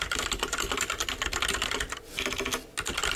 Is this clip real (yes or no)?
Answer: yes